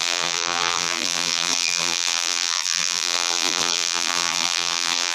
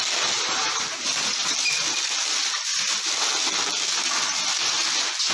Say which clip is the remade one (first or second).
first